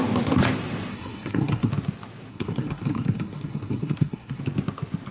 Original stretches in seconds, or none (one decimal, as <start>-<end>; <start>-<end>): 0.0-0.9; 1.7-2.3; 4.4-5.1